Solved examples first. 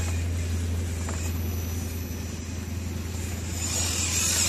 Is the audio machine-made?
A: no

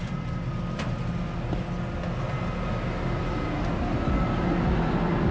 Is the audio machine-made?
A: no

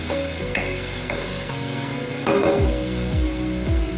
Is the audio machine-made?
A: yes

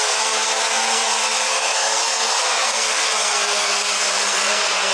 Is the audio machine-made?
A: yes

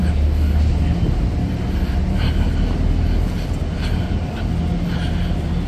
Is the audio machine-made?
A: no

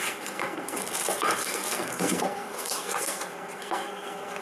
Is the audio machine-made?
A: yes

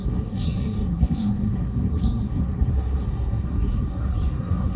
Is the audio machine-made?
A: yes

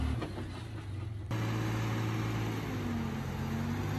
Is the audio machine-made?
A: no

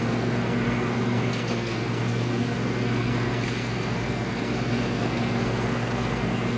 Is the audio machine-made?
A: yes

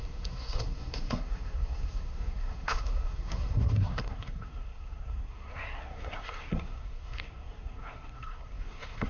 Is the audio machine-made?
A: yes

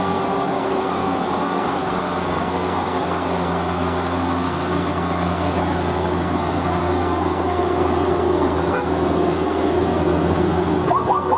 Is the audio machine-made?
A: yes